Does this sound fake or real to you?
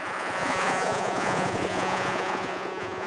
fake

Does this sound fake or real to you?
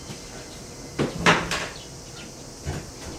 real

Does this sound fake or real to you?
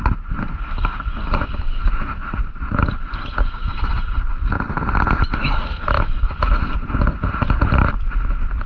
real